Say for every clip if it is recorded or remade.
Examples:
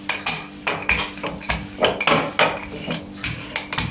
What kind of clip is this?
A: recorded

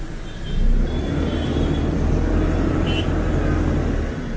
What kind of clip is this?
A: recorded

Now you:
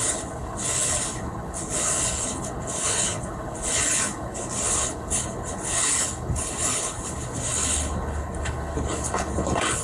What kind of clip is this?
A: remade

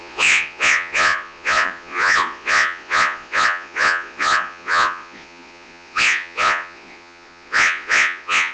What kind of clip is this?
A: remade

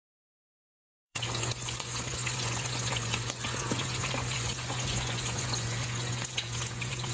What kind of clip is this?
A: remade